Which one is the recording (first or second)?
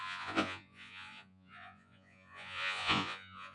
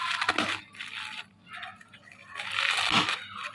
second